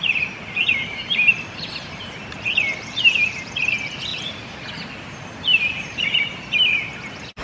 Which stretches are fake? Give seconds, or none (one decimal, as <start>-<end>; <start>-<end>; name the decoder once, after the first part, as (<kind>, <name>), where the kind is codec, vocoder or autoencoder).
0.7-2.4 (vocoder, BigVGAN v2)